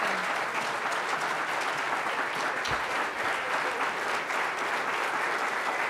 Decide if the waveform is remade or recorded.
recorded